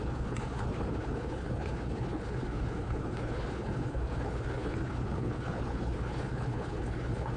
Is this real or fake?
fake